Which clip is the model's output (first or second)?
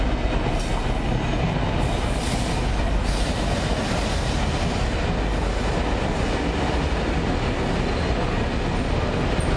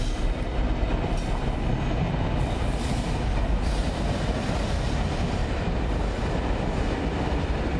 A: second